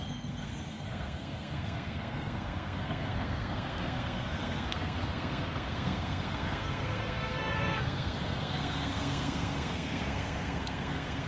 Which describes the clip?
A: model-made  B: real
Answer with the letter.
A